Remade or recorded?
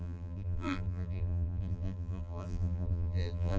remade